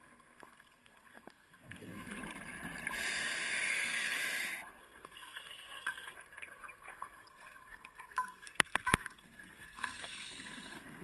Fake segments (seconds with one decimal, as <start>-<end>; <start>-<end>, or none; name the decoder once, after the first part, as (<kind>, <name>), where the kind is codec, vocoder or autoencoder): 0.0-2.2 (codec, SNAC); 3.7-4.2; 4.8-11.0